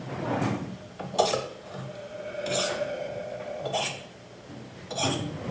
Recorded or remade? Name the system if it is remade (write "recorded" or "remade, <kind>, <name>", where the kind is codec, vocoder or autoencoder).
recorded